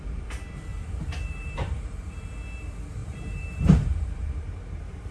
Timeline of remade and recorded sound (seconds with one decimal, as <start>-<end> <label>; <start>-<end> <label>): 0.0-0.7 recorded; 0.7-2.2 remade; 2.2-3.0 recorded; 3.0-5.1 remade

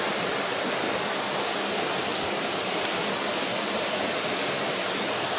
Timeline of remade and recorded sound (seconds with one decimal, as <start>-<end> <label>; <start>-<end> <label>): 0.0-5.4 recorded

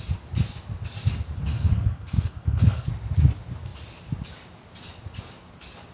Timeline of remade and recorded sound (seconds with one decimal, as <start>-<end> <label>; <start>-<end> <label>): 0.0-1.5 recorded; 1.5-2.9 remade; 2.9-5.9 recorded

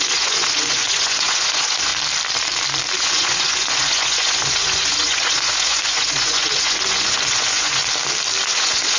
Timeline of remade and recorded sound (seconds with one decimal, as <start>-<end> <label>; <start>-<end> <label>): 0.0-1.9 remade; 1.9-3.0 recorded; 3.0-7.8 remade; 7.8-8.5 recorded; 8.5-9.0 remade

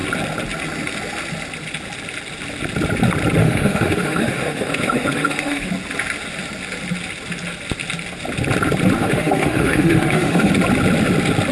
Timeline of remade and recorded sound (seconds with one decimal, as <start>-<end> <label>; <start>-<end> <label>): 0.0-3.4 recorded; 3.4-5.7 remade; 5.7-9.0 recorded; 9.0-10.5 remade; 10.5-11.5 recorded

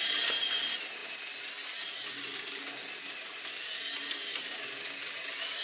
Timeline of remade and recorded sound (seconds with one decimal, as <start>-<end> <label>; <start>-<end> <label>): 0.0-5.6 recorded

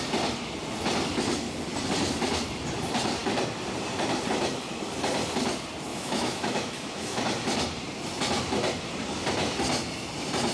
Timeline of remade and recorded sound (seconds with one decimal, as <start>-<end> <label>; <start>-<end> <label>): 0.0-5.9 recorded; 5.9-7.2 remade; 7.2-10.5 recorded